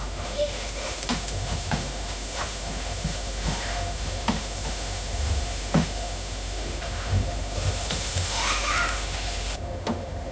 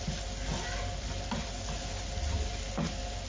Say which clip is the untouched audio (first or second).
second